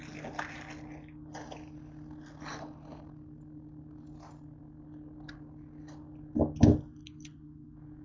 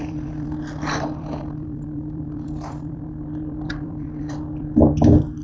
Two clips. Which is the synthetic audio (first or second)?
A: second